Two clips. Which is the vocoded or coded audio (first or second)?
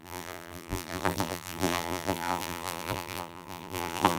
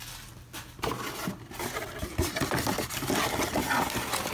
first